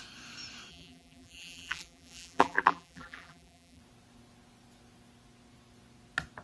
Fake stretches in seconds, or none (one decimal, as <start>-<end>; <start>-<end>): 0.7-3.8